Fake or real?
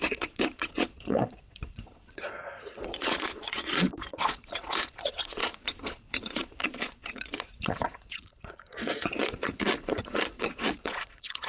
fake